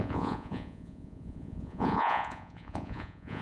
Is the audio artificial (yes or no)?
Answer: yes